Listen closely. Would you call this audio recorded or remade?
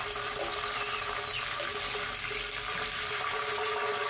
recorded